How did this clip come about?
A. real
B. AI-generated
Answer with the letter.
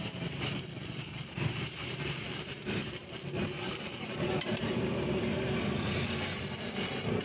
B